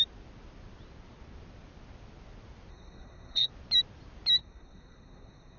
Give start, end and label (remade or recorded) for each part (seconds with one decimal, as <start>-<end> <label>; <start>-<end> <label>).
0.0-2.7 recorded; 2.7-3.5 remade; 3.5-4.4 recorded; 4.4-5.6 remade